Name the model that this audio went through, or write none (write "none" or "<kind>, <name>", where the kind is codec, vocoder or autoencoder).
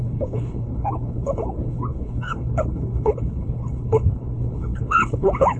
codec, HILCodec